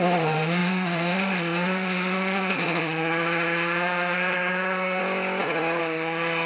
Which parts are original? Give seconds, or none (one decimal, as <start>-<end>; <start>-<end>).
5.0-5.8